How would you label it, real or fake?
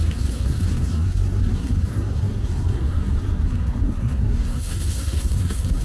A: fake